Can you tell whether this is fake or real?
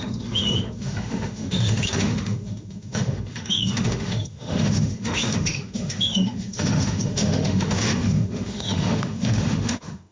fake